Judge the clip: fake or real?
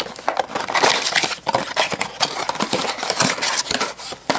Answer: real